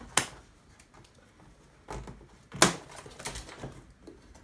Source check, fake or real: real